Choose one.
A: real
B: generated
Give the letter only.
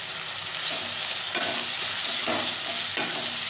A